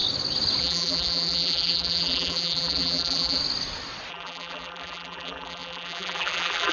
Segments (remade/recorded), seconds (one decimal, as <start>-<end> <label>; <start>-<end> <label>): 0.0-0.6 recorded; 0.6-3.4 remade; 3.4-4.1 recorded; 4.1-6.7 remade